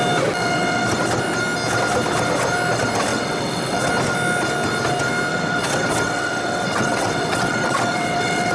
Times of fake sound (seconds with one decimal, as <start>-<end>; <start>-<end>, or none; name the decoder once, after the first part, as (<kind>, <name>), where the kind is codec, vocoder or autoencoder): 0.4-0.9 (vocoder, WaveNeXt); 3.1-3.9; 5.3-8.5